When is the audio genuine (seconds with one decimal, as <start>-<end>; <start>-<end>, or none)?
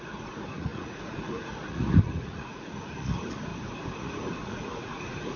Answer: 3.5-4.0